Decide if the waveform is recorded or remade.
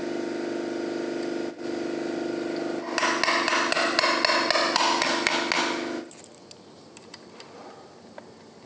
recorded